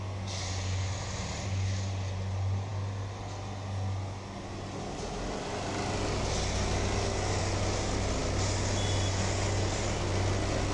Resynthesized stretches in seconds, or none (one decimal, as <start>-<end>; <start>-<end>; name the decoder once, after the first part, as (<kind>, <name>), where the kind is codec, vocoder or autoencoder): none